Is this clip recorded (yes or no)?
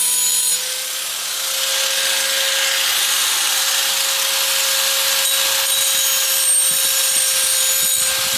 yes